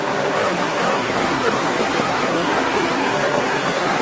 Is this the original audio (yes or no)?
no